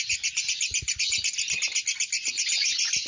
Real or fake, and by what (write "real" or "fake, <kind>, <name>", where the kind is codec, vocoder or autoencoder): real